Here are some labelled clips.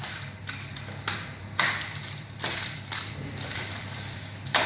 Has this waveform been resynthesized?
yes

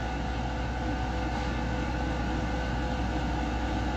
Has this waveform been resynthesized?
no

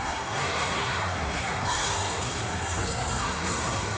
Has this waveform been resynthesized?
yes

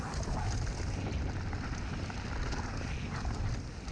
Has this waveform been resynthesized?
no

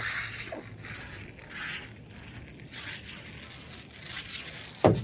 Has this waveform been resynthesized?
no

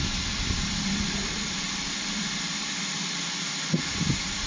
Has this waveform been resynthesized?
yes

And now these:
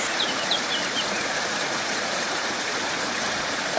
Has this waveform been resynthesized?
yes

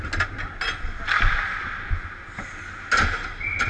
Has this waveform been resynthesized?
no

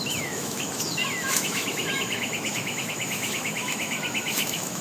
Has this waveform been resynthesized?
yes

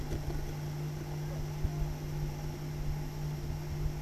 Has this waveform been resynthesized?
no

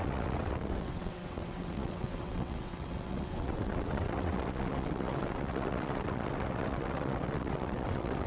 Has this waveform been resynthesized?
yes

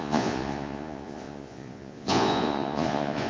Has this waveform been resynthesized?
yes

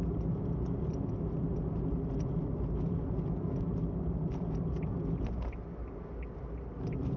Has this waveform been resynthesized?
no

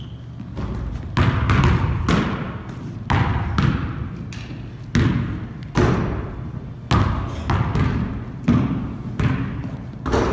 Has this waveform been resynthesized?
no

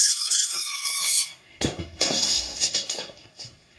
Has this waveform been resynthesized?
yes